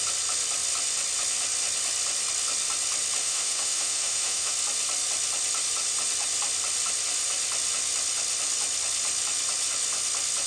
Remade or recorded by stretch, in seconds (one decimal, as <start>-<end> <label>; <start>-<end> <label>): 0.0-3.2 recorded; 3.2-4.5 remade; 4.5-10.5 recorded